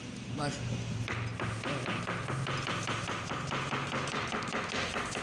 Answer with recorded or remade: recorded